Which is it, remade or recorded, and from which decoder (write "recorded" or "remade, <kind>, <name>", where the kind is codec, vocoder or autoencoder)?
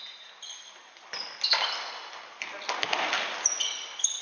recorded